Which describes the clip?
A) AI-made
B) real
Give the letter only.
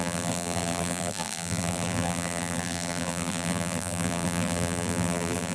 A